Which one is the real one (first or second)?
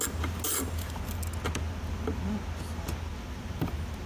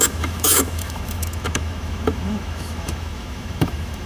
first